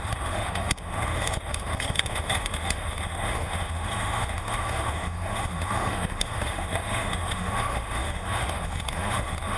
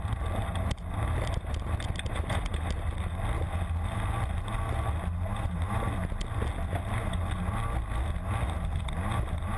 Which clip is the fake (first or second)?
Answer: first